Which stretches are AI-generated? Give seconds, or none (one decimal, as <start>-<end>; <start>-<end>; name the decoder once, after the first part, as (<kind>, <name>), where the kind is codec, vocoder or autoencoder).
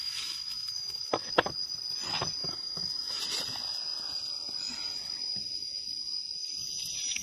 0.0-1.3 (autoencoder, DAC-VAE); 2.4-3.2